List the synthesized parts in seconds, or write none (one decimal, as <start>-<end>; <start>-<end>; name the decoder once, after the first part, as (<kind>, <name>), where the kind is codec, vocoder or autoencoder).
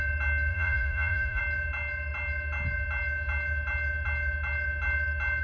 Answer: 0.5-1.4 (vocoder, Vocos)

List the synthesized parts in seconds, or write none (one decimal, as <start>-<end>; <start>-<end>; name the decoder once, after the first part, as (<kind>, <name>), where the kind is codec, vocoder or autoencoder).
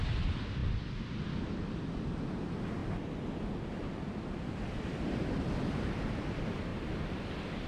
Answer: 2.8-6.1 (vocoder, BigVGAN v2)